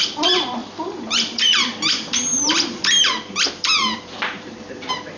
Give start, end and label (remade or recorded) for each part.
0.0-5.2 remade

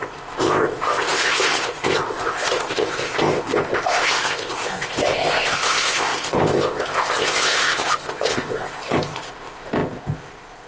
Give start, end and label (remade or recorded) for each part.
0.0-10.7 remade

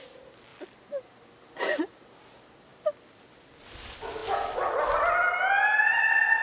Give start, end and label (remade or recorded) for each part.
0.0-0.5 recorded; 0.5-1.3 remade; 1.3-2.7 recorded; 2.7-3.3 remade; 3.3-6.4 recorded

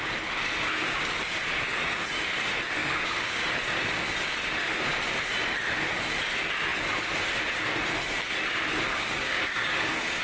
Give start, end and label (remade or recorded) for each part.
0.0-2.8 recorded; 2.8-3.4 remade; 3.4-8.9 recorded; 8.9-10.2 remade

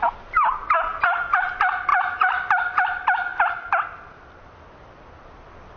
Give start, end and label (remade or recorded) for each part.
0.0-5.8 recorded

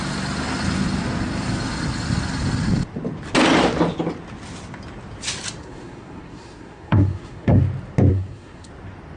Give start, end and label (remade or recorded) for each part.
0.0-5.6 recorded; 5.6-7.6 remade; 7.6-8.1 recorded; 8.1-8.7 remade; 8.7-9.2 recorded

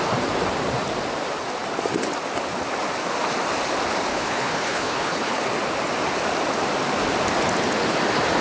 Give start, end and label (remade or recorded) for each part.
0.0-4.1 recorded; 4.1-5.4 remade; 5.4-8.4 recorded

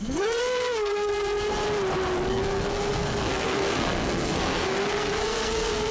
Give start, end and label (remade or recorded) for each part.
0.0-1.1 remade; 1.1-2.3 recorded; 2.3-5.9 remade